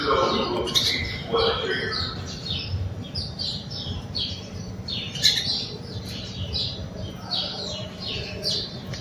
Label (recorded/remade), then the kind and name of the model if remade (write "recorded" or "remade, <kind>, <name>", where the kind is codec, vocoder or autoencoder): remade, vocoder, BigVGAN v2